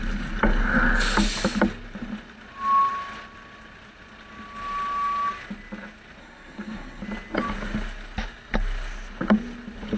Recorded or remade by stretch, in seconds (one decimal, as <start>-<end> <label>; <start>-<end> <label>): 0.0-6.2 recorded; 6.2-7.0 remade; 7.0-10.0 recorded